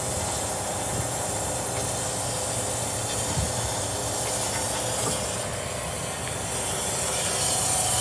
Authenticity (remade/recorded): recorded